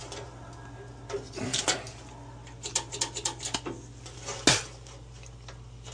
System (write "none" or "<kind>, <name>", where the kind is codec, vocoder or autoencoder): none